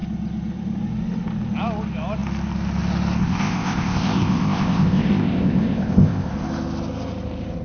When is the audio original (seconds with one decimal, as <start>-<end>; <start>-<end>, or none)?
0.0-3.2; 6.3-7.6